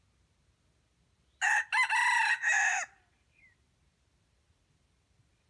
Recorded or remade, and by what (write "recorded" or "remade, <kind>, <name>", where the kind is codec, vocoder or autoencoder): recorded